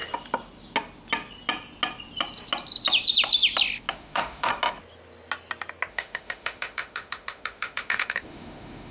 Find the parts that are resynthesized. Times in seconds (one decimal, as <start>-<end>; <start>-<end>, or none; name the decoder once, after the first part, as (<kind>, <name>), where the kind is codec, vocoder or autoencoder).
3.9-4.5 (autoencoder, DAC-VAE); 5.9-8.9